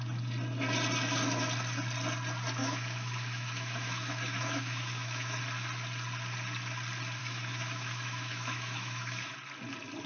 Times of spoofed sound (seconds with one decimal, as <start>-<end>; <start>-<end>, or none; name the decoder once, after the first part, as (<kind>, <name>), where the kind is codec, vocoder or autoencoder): 2.6-5.4 (autoencoder, DAC-VAE); 7.2-9.3